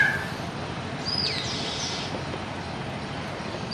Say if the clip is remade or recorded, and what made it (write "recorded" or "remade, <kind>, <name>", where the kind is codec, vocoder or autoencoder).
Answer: recorded